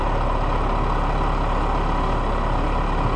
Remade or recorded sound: recorded